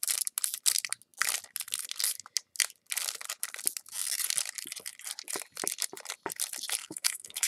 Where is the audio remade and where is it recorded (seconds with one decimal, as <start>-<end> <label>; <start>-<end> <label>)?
0.0-6.8 recorded; 6.8-7.5 remade